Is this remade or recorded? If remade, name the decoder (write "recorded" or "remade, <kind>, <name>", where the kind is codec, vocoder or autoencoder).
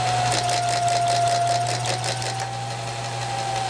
recorded